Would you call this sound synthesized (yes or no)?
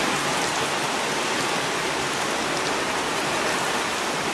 no